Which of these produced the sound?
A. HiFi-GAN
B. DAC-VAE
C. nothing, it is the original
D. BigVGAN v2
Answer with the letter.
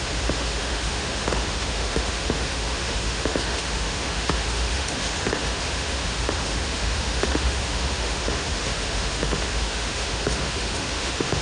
B